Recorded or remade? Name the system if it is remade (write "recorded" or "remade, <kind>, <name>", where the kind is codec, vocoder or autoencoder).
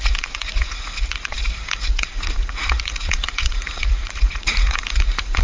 remade, vocoder, Vocos